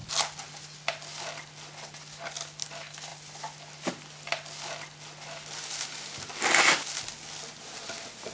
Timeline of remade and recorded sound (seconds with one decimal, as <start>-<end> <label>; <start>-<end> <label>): 0.0-8.3 recorded